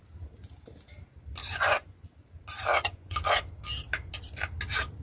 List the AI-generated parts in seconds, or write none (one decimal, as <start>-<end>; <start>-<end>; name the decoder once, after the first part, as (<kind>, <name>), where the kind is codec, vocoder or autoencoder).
1.4-2.0 (vocoder, Vocos); 2.7-3.5